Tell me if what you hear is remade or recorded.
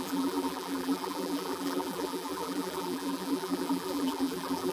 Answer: remade